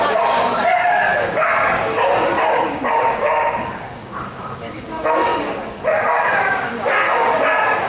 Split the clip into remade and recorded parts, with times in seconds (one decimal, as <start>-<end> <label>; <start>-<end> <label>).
0.0-7.9 remade